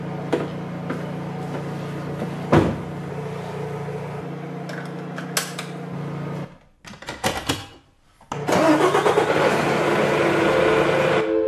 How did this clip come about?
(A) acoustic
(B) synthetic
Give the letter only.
A